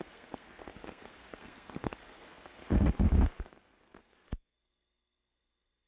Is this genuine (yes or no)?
no